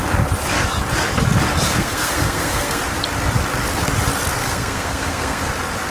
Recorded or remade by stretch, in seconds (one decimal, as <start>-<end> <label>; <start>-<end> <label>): 0.0-1.7 recorded; 1.7-2.8 remade; 2.8-4.4 recorded; 4.4-5.5 remade; 5.5-5.9 recorded